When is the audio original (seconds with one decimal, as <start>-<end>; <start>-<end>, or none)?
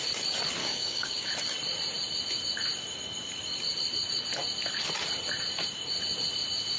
0.0-0.6; 1.3-6.8